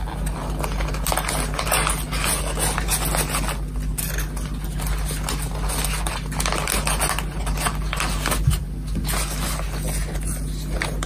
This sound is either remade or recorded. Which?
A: recorded